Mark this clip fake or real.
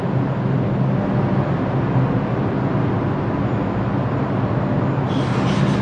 real